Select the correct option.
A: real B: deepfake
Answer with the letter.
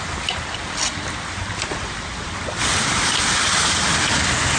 A